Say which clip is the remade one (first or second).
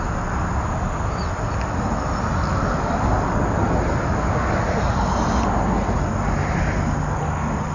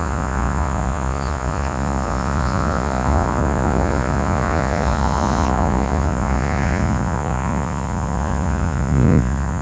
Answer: second